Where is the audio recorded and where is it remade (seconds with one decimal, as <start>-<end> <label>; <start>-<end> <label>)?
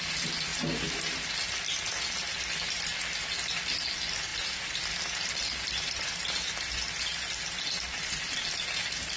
0.0-9.2 recorded